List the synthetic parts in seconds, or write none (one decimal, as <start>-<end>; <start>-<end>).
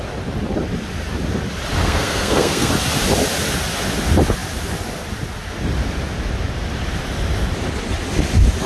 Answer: 1.8-2.7